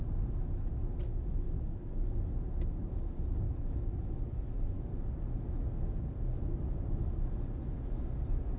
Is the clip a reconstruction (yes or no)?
no